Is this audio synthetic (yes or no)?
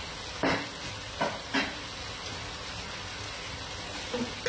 no